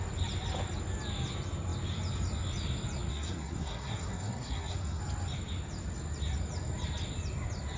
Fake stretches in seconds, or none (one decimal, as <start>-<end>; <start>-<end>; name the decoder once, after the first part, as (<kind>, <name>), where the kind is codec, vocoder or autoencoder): 3.1-5.0 (codec, SNAC)